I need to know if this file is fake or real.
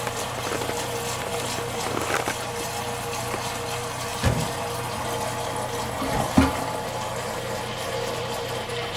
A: real